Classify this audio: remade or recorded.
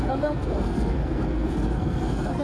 remade